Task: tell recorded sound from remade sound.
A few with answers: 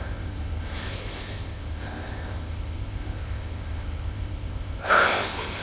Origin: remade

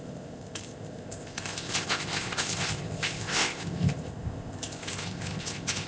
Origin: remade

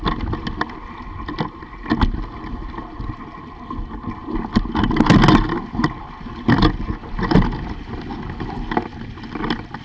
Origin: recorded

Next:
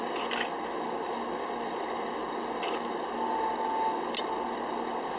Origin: recorded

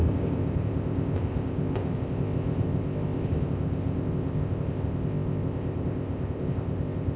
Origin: remade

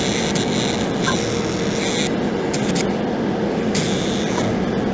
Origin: recorded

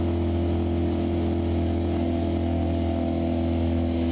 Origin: recorded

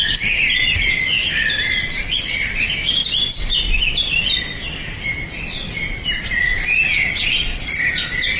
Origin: recorded